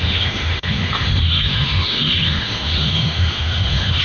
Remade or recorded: remade